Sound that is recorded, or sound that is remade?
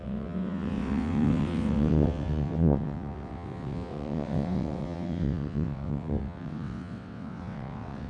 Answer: remade